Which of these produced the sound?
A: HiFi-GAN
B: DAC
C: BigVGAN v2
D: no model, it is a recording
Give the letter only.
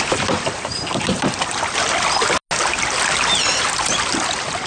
D